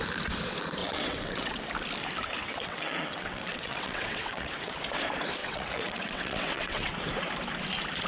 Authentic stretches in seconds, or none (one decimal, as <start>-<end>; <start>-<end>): 0.0-0.8; 1.6-2.4; 4.7-5.4; 6.9-8.1